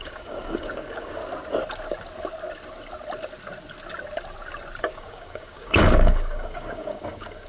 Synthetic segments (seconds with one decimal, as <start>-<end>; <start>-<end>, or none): 0.0-1.2; 4.8-7.5